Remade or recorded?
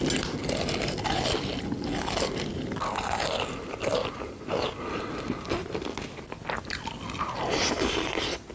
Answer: recorded